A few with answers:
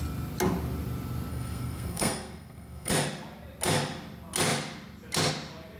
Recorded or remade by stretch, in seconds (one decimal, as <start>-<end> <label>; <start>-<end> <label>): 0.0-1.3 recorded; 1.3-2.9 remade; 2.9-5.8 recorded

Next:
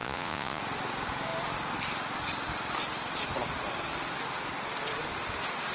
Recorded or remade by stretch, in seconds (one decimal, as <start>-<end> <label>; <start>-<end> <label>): 0.0-0.6 remade; 0.6-5.7 recorded

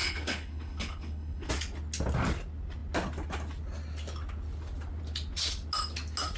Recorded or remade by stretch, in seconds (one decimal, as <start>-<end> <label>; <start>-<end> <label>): 0.0-1.5 remade; 1.5-6.4 recorded